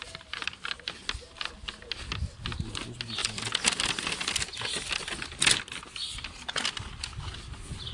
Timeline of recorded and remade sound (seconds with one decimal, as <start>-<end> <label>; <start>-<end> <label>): 0.0-7.9 recorded